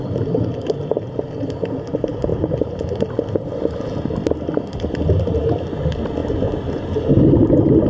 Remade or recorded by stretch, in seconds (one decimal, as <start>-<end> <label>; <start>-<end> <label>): 0.0-2.3 recorded; 2.3-3.1 remade; 3.1-6.2 recorded; 6.2-7.2 remade; 7.2-7.9 recorded